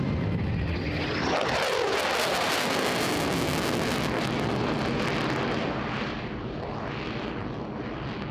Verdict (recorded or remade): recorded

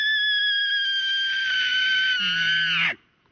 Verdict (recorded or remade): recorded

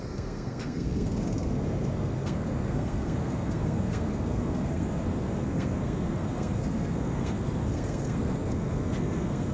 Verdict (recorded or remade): remade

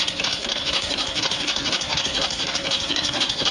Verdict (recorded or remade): remade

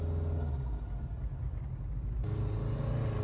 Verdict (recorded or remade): recorded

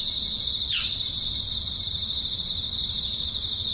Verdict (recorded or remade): recorded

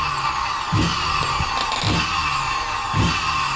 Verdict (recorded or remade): recorded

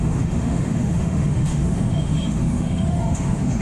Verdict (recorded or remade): remade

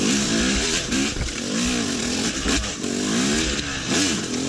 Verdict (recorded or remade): recorded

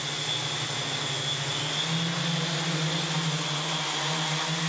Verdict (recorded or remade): recorded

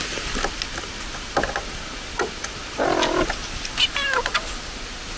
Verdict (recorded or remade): recorded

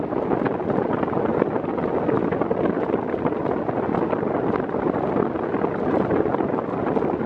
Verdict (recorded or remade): recorded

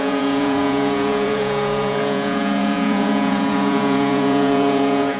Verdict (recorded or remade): remade